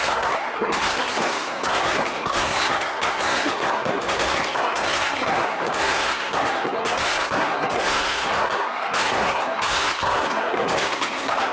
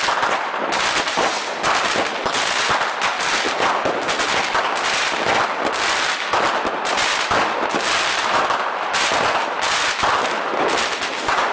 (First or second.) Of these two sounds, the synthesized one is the first